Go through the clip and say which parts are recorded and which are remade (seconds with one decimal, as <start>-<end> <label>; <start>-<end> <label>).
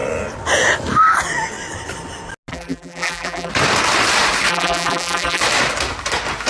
0.0-2.5 recorded; 2.5-3.5 remade; 3.5-4.5 recorded; 4.5-5.4 remade; 5.4-6.5 recorded